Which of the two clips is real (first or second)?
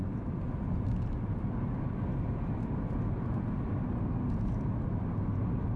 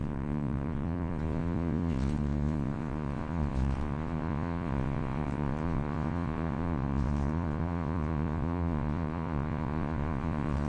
first